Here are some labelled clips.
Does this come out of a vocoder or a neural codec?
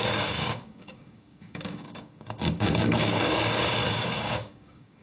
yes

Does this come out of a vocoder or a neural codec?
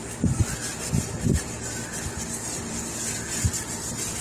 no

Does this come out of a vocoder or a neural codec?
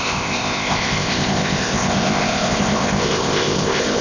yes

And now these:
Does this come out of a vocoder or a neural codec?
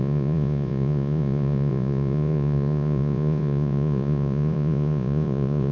yes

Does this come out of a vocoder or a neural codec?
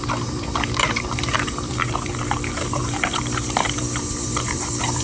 yes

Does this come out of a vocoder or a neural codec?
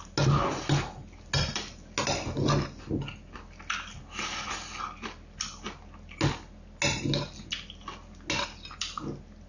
no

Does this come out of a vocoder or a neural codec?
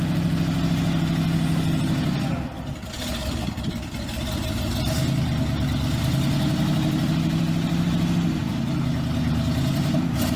no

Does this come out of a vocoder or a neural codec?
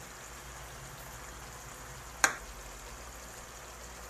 no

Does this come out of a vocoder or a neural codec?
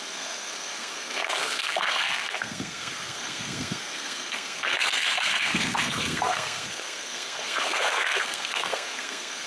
yes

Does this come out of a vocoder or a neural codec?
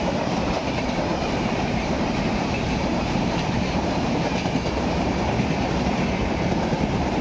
yes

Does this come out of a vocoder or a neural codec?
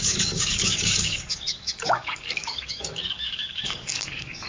yes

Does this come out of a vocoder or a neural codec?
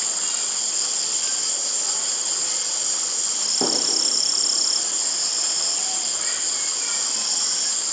no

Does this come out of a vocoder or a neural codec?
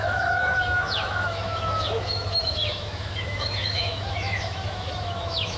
yes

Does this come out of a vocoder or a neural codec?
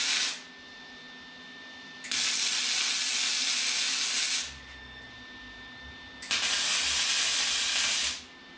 no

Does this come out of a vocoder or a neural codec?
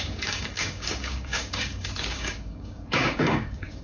yes